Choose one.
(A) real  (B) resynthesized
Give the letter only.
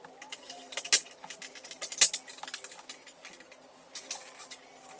A